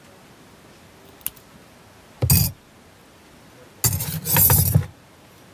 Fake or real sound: real